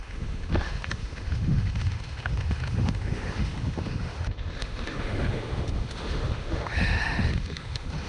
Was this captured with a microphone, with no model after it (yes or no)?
no